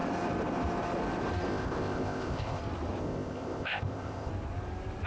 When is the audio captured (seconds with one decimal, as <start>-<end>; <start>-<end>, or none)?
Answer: 0.0-1.5; 2.6-3.0; 4.3-5.1